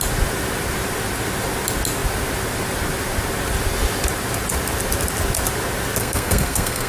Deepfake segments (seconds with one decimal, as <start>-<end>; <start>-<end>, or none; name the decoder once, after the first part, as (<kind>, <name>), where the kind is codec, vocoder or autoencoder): 6.0-6.9 (codec, SNAC)